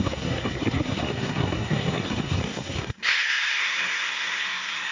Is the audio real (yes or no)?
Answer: no